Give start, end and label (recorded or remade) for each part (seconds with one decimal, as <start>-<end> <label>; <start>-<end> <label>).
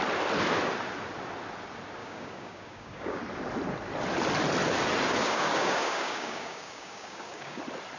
0.0-2.0 recorded; 2.0-3.2 remade; 3.2-5.2 recorded; 5.2-7.6 remade; 7.6-8.0 recorded